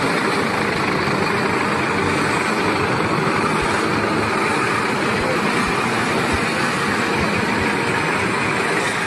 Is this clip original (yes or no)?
yes